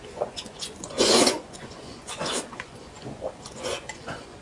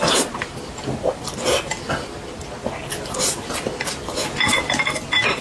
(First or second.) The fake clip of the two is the first